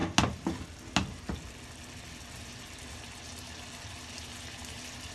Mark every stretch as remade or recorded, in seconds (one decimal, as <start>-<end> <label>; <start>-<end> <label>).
0.0-5.1 recorded